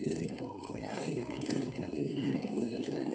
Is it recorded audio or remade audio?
remade